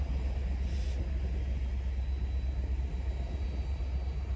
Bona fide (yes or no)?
yes